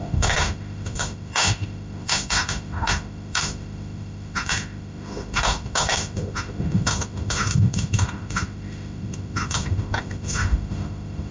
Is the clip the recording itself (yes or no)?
no